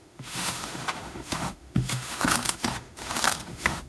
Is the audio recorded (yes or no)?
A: no